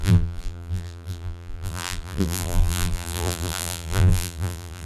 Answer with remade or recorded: remade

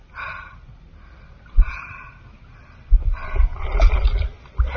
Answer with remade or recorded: recorded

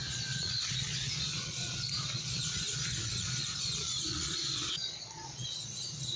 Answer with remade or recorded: remade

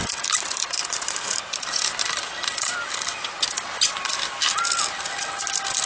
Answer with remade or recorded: recorded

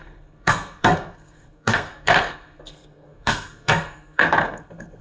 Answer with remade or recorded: remade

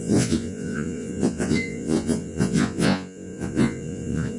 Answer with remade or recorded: remade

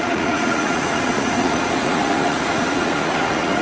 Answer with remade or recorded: remade